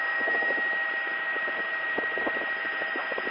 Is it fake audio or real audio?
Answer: fake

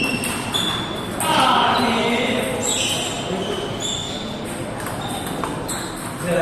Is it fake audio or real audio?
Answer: real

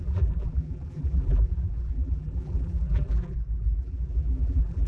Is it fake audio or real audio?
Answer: fake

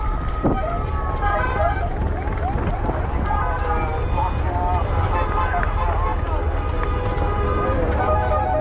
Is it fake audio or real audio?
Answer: real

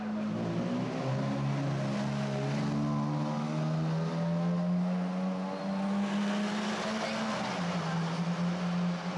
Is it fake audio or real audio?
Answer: real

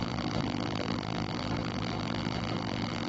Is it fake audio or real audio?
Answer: fake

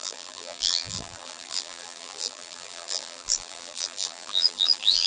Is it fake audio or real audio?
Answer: fake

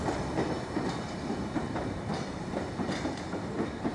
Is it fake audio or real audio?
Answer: fake